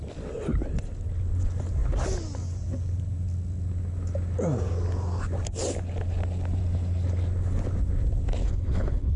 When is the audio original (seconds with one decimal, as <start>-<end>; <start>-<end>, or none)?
0.0-8.4